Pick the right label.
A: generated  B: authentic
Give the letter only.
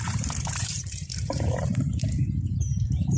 A